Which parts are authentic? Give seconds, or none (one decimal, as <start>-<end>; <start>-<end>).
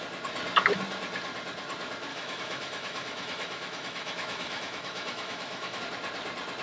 0.0-2.1; 5.8-6.6